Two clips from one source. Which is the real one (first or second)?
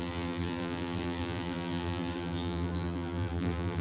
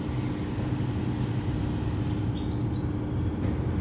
second